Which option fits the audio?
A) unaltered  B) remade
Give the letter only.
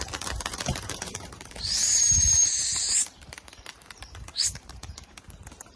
B